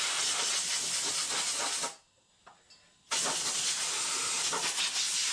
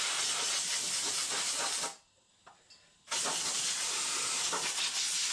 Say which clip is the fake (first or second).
second